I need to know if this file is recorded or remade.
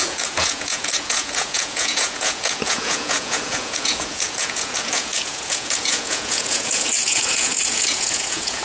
remade